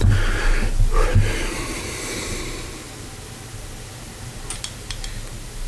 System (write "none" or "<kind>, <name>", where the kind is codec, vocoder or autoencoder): none